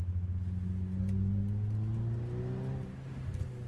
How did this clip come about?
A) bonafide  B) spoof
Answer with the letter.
A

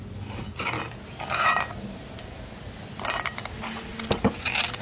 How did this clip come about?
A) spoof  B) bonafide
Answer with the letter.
B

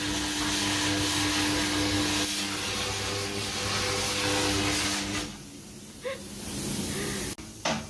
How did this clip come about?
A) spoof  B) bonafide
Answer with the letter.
B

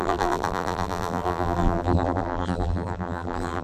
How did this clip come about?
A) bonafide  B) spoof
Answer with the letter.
B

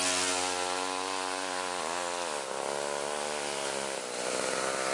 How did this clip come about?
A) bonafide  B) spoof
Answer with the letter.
A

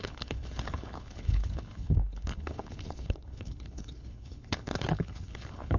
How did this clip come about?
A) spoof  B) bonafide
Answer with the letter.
A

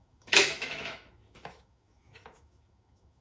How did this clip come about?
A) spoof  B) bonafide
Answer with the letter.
A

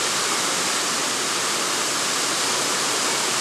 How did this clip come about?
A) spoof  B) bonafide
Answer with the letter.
A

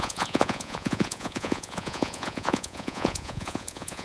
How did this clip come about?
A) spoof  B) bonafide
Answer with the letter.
A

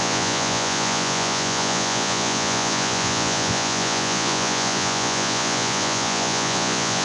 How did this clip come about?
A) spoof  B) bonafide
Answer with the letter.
A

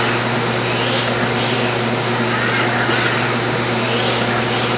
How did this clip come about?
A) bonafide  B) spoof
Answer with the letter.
A